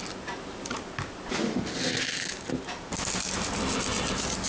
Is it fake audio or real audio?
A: real